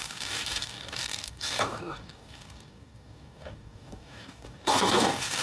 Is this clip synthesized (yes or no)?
yes